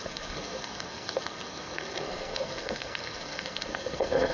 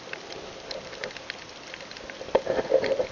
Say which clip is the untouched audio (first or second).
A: second